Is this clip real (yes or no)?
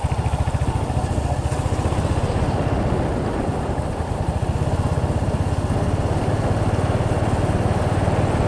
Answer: yes